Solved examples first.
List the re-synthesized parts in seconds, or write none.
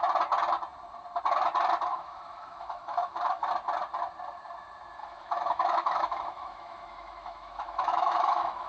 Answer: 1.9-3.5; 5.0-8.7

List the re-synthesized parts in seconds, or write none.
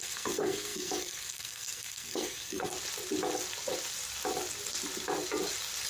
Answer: 0.0-2.7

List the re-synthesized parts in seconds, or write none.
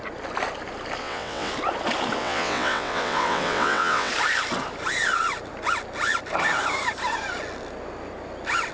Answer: 1.0-1.5; 2.2-4.1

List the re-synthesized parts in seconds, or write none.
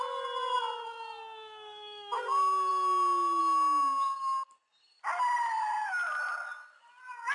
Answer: none